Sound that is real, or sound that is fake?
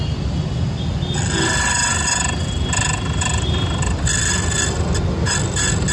real